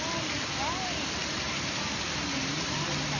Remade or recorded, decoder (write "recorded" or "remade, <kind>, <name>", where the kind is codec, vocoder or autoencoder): recorded